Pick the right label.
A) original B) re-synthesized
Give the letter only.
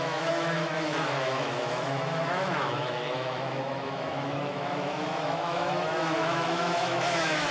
B